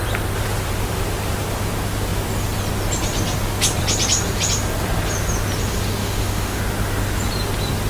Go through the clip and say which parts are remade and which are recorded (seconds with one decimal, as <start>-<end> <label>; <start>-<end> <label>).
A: 0.0-6.0 recorded; 6.0-6.6 remade; 6.6-7.9 recorded